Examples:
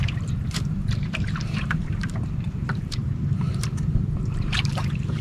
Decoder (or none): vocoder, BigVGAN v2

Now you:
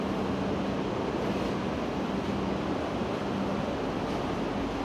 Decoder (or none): none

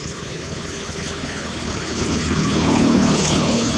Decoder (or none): codec, HILCodec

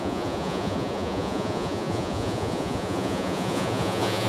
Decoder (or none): vocoder, Vocos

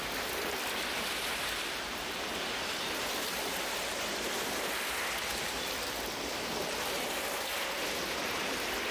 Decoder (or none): none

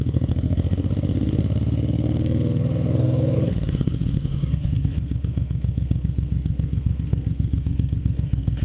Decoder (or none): codec, SNAC